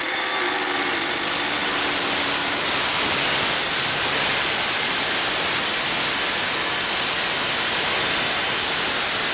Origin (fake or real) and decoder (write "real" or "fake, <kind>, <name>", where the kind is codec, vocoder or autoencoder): real